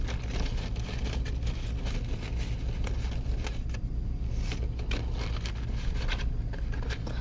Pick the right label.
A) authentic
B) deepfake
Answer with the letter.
A